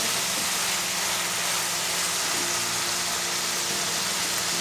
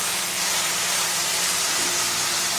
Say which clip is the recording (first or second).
first